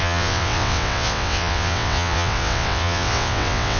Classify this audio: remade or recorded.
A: remade